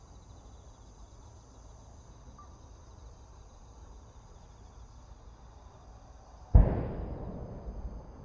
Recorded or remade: recorded